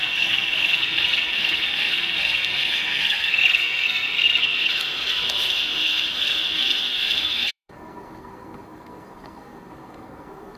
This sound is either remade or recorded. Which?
remade